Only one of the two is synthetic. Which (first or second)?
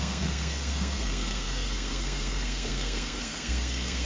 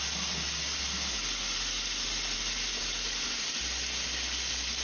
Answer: first